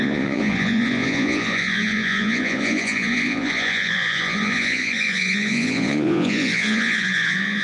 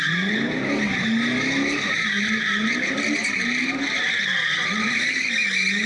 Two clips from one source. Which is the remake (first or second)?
first